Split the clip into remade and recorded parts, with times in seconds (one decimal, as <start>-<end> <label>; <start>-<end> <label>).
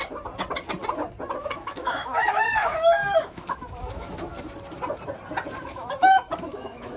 0.0-1.4 recorded; 1.4-4.3 remade; 4.3-5.6 recorded; 5.6-7.0 remade